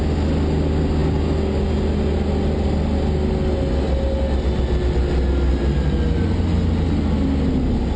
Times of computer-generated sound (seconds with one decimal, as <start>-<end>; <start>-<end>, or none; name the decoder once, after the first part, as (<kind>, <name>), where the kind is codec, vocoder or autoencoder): none